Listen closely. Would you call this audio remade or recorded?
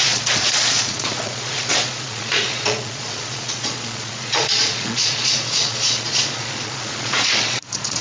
remade